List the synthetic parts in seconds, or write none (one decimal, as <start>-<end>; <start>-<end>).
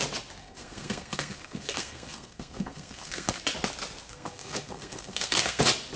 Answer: 0.4-3.4; 4.0-5.6